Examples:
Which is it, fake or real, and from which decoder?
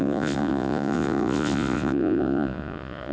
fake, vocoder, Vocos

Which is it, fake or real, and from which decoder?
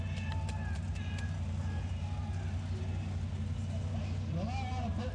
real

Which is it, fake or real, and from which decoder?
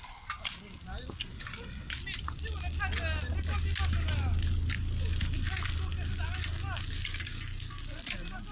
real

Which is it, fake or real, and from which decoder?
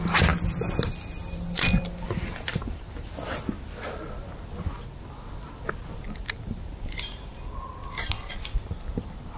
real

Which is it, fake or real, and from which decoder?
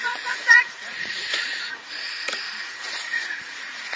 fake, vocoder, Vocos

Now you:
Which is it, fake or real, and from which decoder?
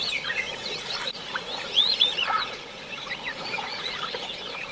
fake, vocoder, Vocos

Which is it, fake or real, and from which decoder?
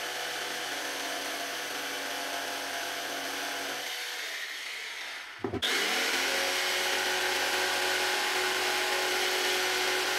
real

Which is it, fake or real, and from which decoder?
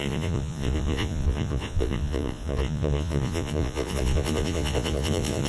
fake, vocoder, Vocos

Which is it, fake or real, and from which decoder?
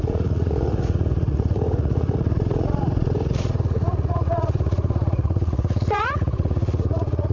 fake, vocoder, Vocos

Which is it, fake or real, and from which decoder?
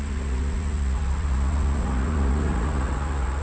fake, vocoder, Vocos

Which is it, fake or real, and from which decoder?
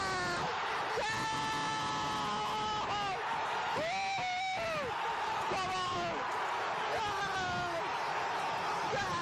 real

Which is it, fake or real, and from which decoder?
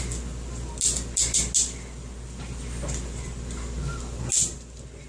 real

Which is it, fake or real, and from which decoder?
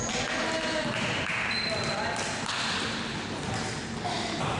real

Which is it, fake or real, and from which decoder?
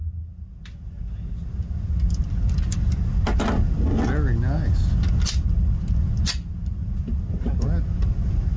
real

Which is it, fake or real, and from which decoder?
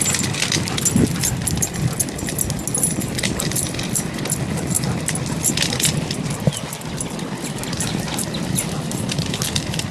real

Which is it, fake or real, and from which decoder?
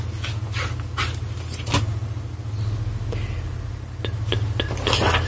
real